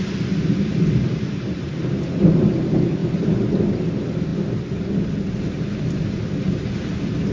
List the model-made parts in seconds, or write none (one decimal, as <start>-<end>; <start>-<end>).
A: 1.1-2.2